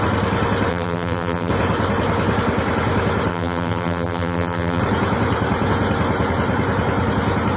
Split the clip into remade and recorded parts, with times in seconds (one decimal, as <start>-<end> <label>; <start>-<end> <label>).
0.0-0.7 recorded; 0.7-1.5 remade; 1.5-3.3 recorded; 3.3-4.8 remade; 4.8-7.6 recorded